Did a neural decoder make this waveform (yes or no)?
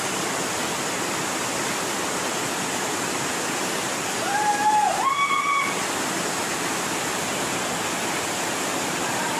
no